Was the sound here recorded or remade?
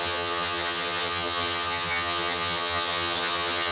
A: remade